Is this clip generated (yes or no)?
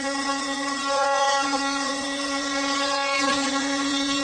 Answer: yes